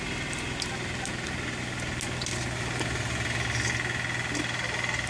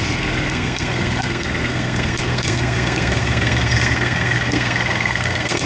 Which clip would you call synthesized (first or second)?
second